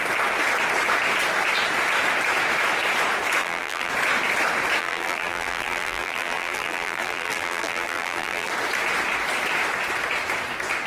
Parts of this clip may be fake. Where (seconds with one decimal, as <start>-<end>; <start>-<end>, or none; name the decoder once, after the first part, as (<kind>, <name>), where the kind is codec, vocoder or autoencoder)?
3.4-3.9 (vocoder, BigVGAN v2); 4.8-8.5